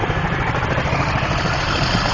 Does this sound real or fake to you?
real